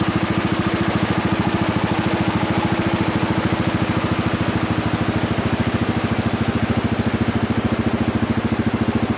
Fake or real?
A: real